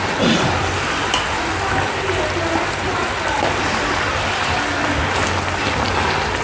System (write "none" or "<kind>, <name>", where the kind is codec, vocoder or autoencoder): none